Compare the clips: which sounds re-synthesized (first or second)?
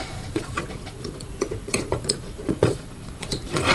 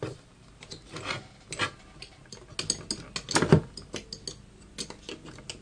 first